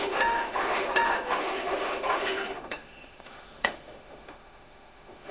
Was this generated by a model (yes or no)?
yes